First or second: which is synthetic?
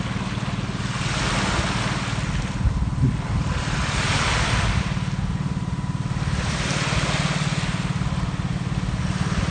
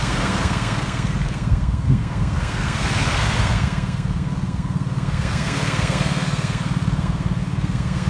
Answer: second